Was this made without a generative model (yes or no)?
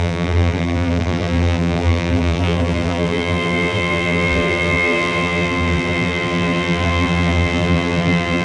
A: no